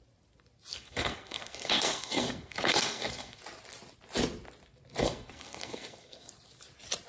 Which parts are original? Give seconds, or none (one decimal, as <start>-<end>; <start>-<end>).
0.0-0.7; 3.4-5.0; 6.3-7.1